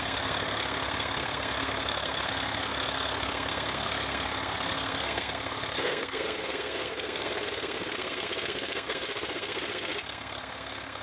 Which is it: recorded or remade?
remade